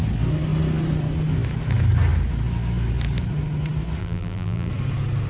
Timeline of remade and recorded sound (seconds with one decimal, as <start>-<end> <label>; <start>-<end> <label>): 0.0-4.0 recorded; 4.0-4.7 remade; 4.7-5.3 recorded